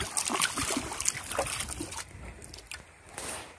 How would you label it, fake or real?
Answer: real